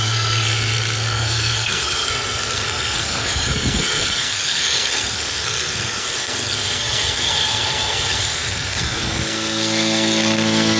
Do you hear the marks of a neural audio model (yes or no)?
yes